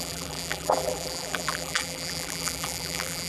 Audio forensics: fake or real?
fake